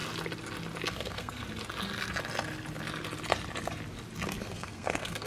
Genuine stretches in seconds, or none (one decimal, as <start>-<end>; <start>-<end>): 0.0-0.9; 1.4-4.4